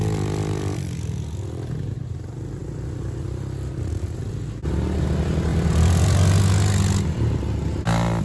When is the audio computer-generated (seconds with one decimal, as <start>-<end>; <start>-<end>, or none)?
2.6-5.0; 5.5-6.4